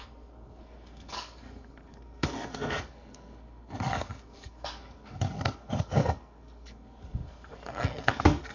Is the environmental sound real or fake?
fake